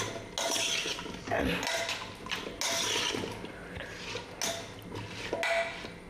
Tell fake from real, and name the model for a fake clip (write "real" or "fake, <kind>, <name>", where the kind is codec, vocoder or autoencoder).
real